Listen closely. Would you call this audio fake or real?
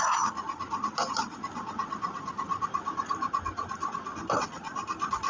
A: real